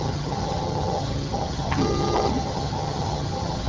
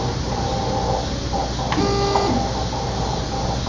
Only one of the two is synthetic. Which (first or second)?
first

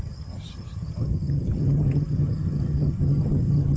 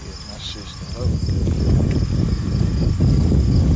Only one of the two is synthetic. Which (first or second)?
first